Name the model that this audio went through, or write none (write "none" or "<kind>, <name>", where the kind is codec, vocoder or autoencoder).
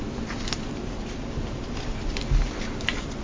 none